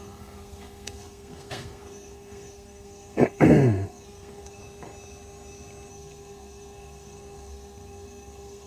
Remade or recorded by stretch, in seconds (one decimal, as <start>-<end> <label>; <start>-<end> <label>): 0.0-4.6 remade; 4.6-5.9 recorded; 5.9-8.7 remade